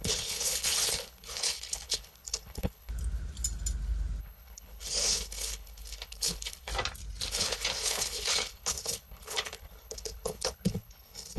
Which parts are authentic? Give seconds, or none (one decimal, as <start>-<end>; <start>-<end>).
2.9-4.2; 6.7-7.3

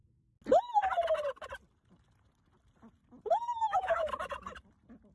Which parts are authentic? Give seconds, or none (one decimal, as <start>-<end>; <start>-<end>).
0.0-3.5; 4.1-5.1